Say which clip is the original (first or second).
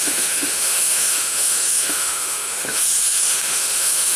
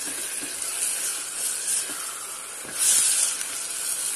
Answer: second